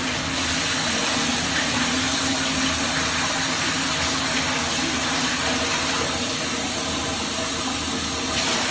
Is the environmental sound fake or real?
real